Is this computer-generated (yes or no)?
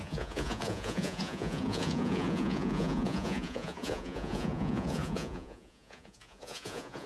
yes